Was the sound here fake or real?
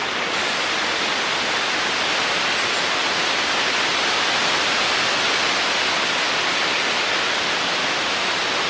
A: real